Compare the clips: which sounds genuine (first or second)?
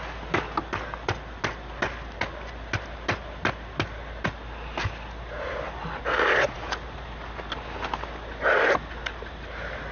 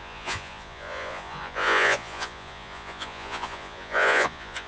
first